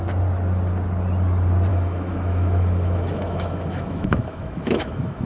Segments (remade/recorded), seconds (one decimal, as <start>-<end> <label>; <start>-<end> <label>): 0.0-1.7 recorded; 1.7-5.3 remade